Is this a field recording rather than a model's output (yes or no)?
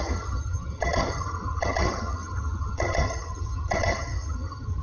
no